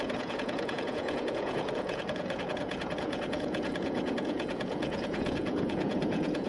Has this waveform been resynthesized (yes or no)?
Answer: yes